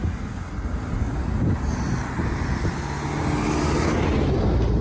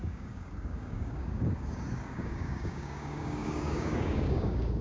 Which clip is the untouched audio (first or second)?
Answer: first